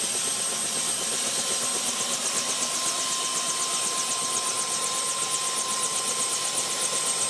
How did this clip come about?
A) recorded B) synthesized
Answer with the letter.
A